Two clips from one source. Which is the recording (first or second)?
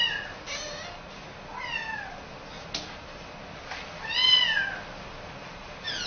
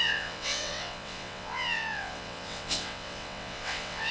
first